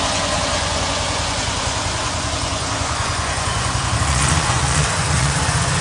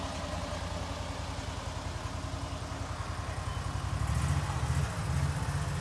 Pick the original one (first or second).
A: second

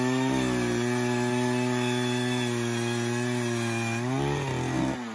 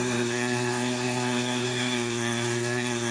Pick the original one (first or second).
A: first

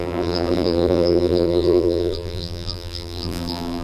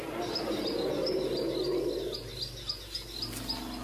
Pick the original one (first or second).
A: second